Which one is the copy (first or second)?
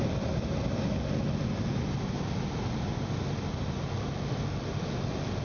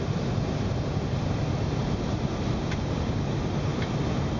second